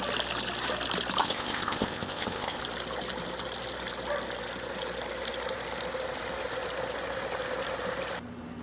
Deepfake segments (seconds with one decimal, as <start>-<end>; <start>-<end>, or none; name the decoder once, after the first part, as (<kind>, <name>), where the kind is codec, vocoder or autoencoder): 1.2-2.6 (codec, ZipCodec)